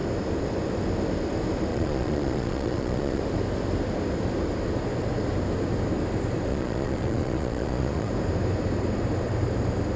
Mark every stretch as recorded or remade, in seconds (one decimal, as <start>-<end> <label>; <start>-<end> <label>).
0.0-1.7 recorded; 1.7-3.2 remade; 3.2-6.5 recorded; 6.5-8.1 remade; 8.1-10.0 recorded